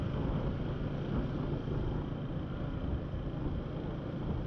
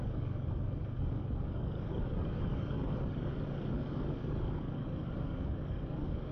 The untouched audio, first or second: first